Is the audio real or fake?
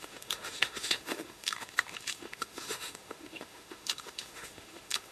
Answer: fake